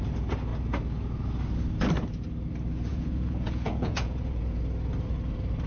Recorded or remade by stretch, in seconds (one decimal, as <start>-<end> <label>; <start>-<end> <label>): 0.0-2.9 recorded; 2.9-4.6 remade; 4.6-5.7 recorded